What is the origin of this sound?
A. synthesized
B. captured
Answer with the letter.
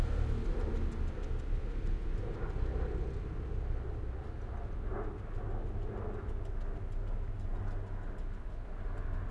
B